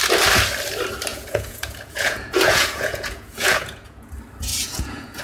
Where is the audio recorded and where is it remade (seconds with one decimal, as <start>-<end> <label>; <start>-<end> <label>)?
0.0-1.1 recorded; 1.1-4.1 remade; 4.1-4.5 recorded; 4.5-5.2 remade